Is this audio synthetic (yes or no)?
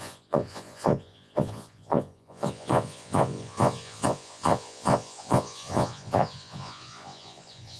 yes